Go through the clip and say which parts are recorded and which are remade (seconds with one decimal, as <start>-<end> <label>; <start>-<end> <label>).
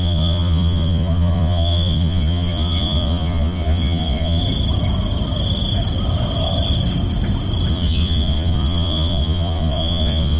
0.0-4.4 remade; 4.4-7.7 recorded; 7.7-10.4 remade